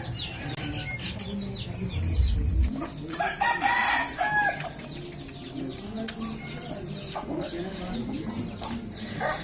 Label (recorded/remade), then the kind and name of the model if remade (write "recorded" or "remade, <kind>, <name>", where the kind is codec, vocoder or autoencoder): recorded